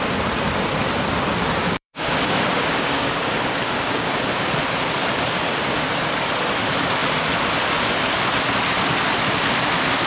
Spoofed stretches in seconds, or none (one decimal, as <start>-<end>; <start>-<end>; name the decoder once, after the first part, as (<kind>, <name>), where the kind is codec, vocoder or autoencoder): 1.6-4.1 (codec, DAC)